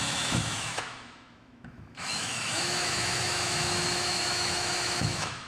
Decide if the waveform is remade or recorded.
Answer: remade